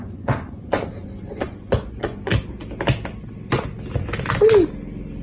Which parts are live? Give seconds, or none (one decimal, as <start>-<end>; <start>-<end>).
2.3-5.2